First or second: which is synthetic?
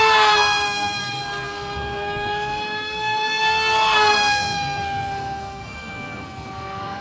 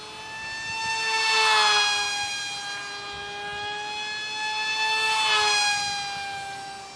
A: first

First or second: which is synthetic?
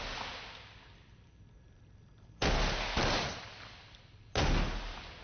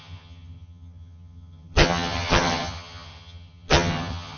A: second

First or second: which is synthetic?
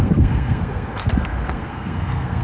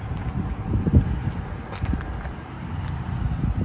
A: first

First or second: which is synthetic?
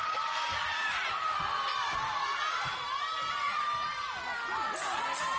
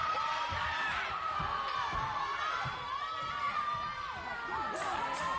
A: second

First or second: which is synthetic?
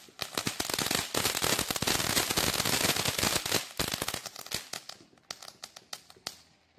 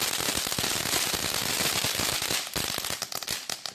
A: second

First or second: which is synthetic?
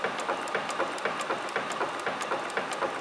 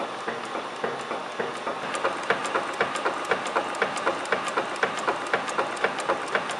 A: first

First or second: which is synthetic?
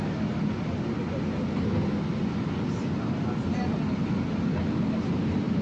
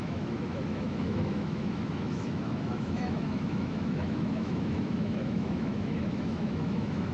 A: second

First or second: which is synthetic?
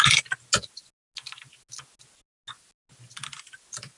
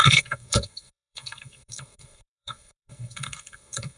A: second